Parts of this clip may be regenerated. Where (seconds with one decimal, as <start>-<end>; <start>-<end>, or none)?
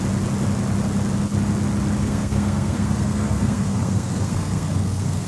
2.0-5.3